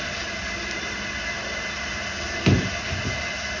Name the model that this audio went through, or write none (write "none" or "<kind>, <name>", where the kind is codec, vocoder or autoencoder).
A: none